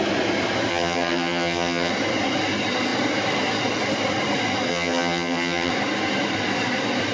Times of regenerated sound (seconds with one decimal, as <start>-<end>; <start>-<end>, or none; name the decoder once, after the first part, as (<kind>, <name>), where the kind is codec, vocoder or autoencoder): 0.7-1.9 (vocoder, HiFi-GAN); 4.7-5.7